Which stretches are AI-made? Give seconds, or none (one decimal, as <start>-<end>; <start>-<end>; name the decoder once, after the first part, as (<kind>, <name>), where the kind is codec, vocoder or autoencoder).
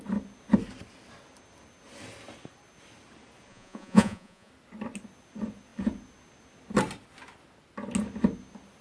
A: 3.5-4.5 (vocoder, Vocos)